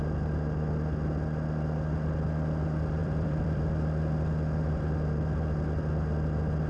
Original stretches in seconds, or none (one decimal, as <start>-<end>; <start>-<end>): 0.0-3.0; 3.6-6.7